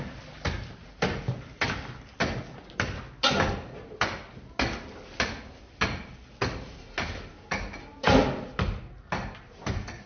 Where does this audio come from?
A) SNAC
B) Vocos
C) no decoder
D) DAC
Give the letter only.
C